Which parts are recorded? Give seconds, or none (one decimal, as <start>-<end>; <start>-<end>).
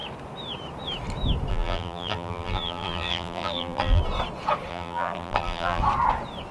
0.0-1.5; 4.0-4.7; 5.8-6.5